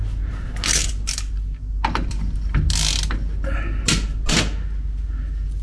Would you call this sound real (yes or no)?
yes